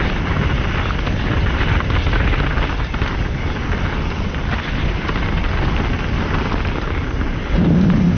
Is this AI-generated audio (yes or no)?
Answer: no